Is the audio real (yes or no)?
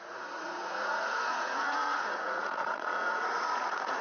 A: no